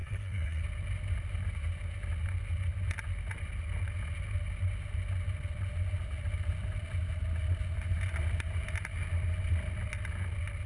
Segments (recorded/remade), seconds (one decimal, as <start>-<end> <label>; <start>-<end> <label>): 0.0-0.6 remade; 0.6-10.7 recorded